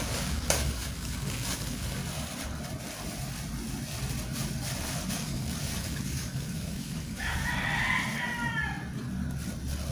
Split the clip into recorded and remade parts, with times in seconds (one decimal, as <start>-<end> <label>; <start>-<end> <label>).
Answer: 0.0-2.0 remade; 2.0-5.1 recorded; 5.1-7.4 remade; 7.4-9.9 recorded